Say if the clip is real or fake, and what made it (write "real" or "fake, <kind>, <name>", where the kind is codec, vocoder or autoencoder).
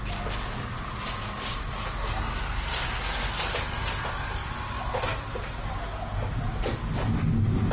real